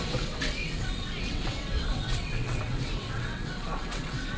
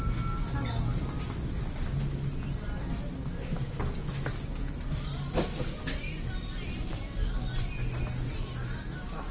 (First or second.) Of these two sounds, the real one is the second